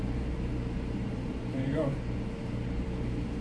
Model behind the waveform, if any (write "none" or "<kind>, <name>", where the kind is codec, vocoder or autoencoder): vocoder, BigVGAN v2